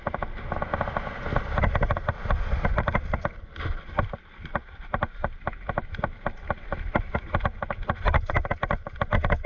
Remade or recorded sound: recorded